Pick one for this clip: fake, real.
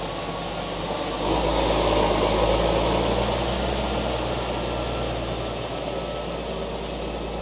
real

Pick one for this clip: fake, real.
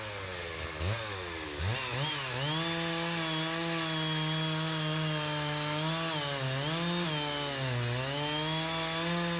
real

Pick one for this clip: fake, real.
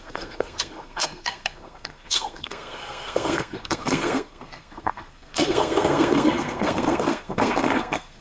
fake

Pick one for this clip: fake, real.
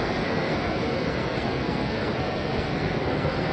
fake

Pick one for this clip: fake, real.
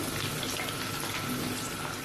real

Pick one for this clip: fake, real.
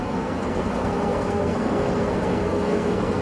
fake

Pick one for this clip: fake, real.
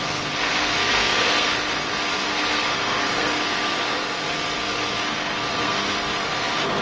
fake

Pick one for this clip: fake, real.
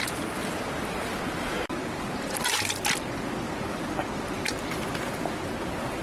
real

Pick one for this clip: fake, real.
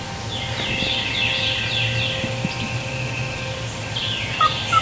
real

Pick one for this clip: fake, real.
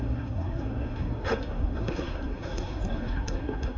fake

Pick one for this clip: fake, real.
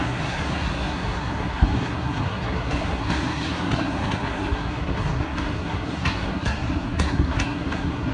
fake